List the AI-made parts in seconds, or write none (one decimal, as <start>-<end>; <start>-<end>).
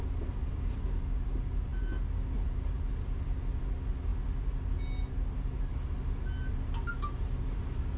none